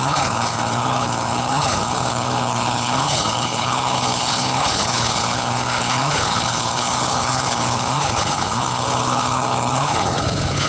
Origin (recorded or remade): remade